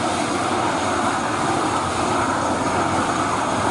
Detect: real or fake fake